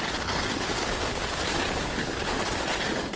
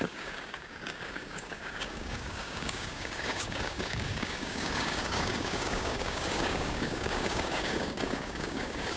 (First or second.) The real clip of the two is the first